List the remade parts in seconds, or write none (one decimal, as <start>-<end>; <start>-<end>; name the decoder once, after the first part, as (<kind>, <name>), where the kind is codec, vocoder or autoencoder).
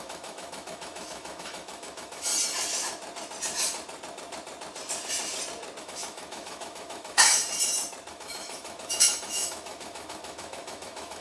0.0-2.3 (autoencoder, DAC-VAE); 5.8-7.4; 8.1-11.2